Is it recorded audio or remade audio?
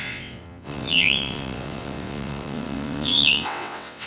remade